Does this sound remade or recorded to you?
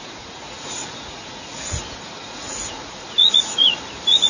remade